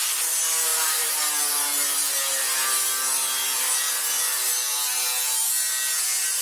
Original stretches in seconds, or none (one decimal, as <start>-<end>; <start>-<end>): 0.0-0.7; 1.3-6.4